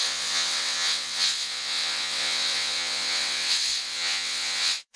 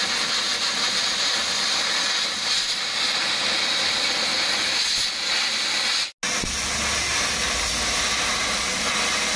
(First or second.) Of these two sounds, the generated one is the first